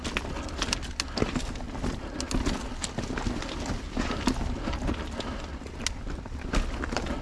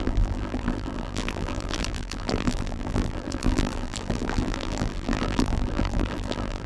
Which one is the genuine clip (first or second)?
first